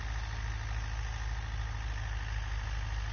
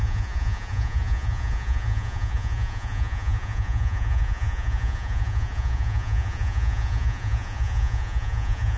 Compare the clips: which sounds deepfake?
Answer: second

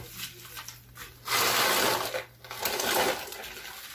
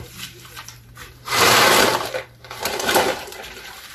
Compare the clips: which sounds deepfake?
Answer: second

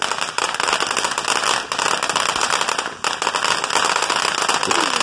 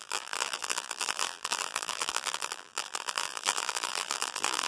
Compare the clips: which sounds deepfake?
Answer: second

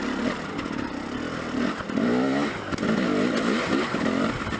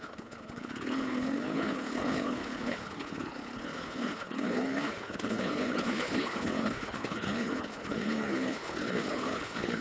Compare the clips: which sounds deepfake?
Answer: second